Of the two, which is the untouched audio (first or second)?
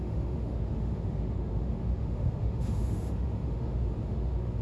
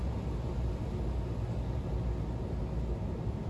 second